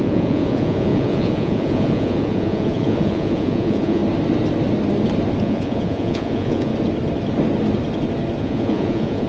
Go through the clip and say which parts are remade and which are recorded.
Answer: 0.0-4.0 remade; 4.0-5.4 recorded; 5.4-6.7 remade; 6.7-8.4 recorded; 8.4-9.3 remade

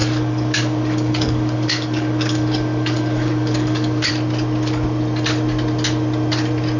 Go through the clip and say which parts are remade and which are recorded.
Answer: 0.0-4.1 remade; 4.1-6.8 recorded

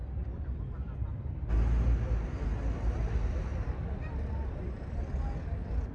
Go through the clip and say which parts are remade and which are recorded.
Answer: 0.0-1.5 remade; 1.5-3.5 recorded; 3.5-4.2 remade; 4.2-5.9 recorded

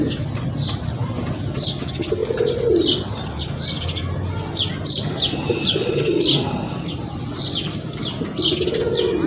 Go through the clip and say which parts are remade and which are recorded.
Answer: 0.0-9.3 recorded

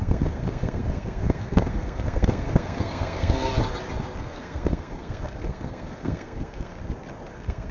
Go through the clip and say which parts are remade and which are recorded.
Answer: 0.0-3.5 remade; 3.5-4.2 recorded; 4.2-6.8 remade; 6.8-7.3 recorded; 7.3-7.7 remade

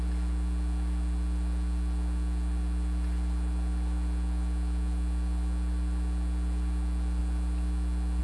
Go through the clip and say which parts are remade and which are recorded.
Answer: 0.0-8.2 recorded